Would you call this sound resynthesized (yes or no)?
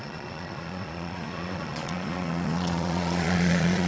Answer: yes